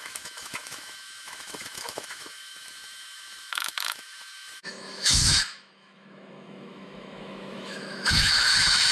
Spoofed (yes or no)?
yes